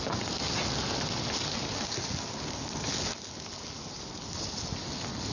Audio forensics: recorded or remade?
recorded